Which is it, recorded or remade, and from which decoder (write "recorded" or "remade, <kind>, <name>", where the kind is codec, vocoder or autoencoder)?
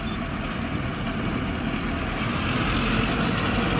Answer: recorded